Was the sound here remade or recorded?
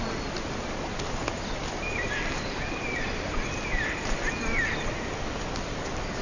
recorded